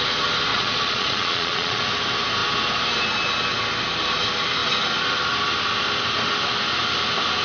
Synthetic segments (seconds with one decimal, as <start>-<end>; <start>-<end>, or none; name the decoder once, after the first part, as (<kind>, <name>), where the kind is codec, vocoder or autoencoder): 0.5-1.8 (vocoder, Vocos)

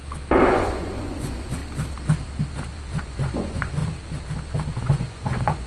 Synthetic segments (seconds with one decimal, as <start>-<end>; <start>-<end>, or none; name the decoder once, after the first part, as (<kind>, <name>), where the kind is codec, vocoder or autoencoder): 0.5-1.6 (vocoder, Vocos); 3.0-3.8; 4.8-5.7

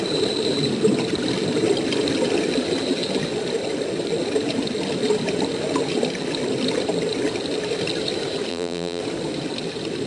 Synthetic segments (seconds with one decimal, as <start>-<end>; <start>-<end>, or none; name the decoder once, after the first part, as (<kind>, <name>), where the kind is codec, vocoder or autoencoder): 8.5-9.0 (vocoder, BigVGAN v2)